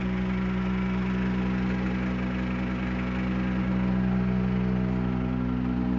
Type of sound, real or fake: real